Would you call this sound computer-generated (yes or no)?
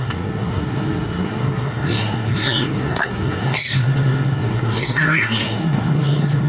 yes